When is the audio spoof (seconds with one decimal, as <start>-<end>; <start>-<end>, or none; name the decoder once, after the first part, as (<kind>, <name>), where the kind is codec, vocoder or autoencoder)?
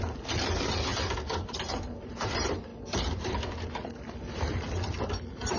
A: none